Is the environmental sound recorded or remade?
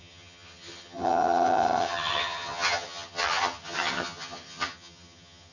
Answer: remade